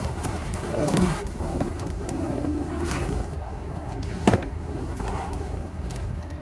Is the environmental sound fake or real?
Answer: fake